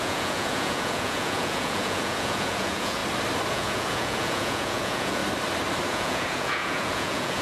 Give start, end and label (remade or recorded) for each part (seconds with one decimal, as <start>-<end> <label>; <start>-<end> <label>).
0.0-3.0 remade; 3.0-3.5 recorded; 3.5-5.2 remade; 5.2-5.9 recorded; 5.9-7.4 remade